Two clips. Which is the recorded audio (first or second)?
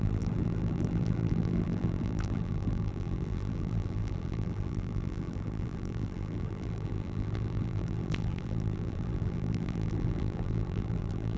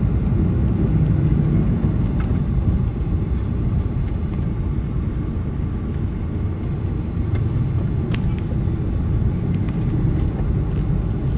second